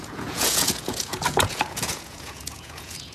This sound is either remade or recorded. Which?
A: remade